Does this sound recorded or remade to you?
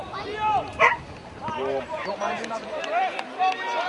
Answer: remade